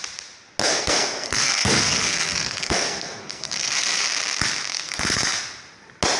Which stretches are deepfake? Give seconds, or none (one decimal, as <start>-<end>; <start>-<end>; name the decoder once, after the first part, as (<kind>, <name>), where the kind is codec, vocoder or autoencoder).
0.6-4.0 (codec, SNAC); 4.7-5.4